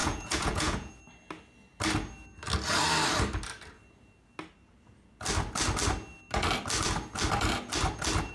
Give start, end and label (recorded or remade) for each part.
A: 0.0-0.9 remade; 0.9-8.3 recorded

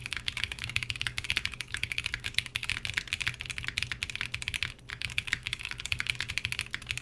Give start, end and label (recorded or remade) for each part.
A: 0.0-2.7 remade; 2.7-4.9 recorded; 4.9-6.3 remade; 6.3-7.0 recorded

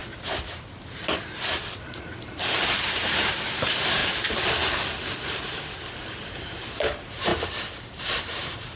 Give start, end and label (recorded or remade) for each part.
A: 0.0-4.0 remade; 4.0-5.9 recorded; 5.9-8.8 remade

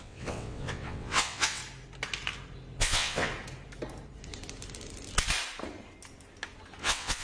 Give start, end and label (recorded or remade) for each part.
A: 0.0-1.6 remade; 1.6-2.8 recorded; 2.8-3.3 remade; 3.3-6.8 recorded; 6.8-7.2 remade

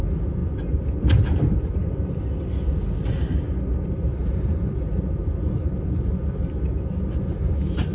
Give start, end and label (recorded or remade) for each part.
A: 0.0-4.2 recorded; 4.2-5.0 remade; 5.0-6.1 recorded; 6.1-6.7 remade; 6.7-7.9 recorded

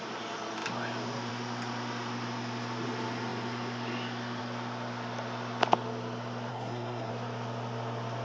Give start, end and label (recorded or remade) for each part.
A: 0.0-6.5 recorded; 6.5-7.1 remade; 7.1-8.2 recorded

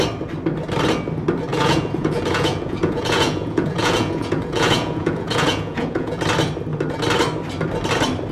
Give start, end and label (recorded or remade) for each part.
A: 0.0-1.5 recorded; 1.5-6.2 remade; 6.2-8.3 recorded